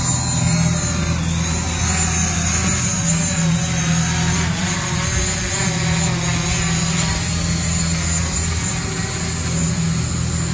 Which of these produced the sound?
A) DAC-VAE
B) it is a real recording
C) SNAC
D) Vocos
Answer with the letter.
B